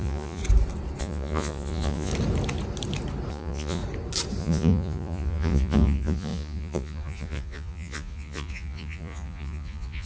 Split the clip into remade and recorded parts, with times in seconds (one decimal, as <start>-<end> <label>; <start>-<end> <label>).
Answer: 0.0-0.4 remade; 0.4-1.0 recorded; 1.0-2.1 remade; 2.1-3.3 recorded; 3.3-3.8 remade; 3.8-4.4 recorded; 4.4-10.1 remade